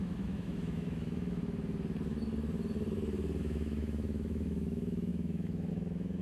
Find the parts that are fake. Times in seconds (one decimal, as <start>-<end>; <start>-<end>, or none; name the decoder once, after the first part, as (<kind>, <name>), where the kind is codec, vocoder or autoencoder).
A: 0.0-1.4 (autoencoder, DAC-VAE); 3.4-6.2